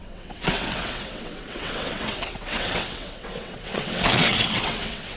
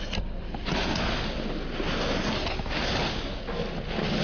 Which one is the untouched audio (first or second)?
second